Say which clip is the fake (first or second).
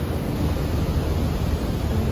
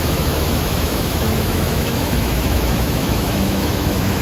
second